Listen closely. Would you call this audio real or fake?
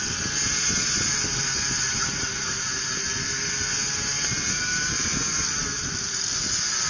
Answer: real